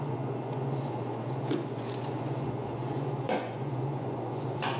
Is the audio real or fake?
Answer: fake